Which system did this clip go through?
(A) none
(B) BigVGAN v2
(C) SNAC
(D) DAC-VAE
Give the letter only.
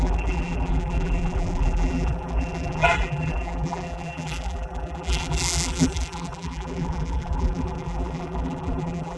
B